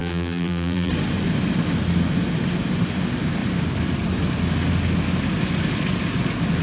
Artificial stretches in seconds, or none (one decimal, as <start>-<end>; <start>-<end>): 0.0-0.9